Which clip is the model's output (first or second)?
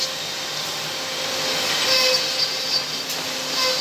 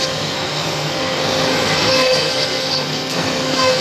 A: second